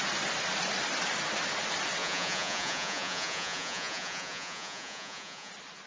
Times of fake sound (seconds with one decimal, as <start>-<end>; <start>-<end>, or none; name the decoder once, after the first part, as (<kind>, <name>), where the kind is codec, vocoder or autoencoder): 2.0-5.5 (vocoder, Vocos)